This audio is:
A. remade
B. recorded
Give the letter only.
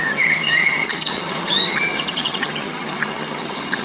A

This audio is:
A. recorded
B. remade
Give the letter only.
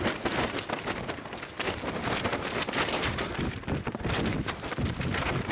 A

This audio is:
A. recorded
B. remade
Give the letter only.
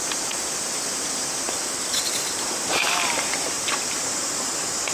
B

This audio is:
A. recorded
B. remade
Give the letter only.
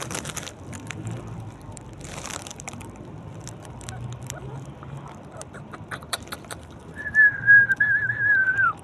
B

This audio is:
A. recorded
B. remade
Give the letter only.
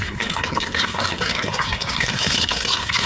B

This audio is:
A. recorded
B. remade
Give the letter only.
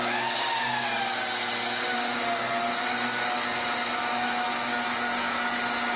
A